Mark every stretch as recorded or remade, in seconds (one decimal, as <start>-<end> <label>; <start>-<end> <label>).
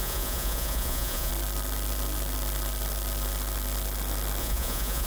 0.0-1.3 remade; 1.3-4.4 recorded; 4.4-5.1 remade